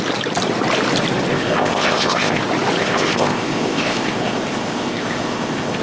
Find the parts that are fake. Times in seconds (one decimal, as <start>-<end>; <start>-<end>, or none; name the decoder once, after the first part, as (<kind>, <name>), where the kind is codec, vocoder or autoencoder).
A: 1.3-2.4 (codec, ZipCodec); 2.8-5.8